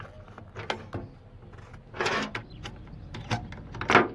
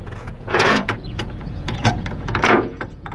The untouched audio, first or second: first